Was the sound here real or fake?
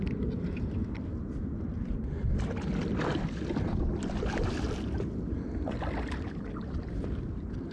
fake